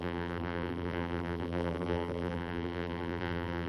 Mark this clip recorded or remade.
remade